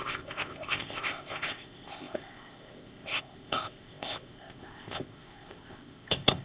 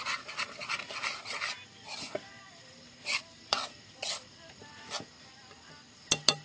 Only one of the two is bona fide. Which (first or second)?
second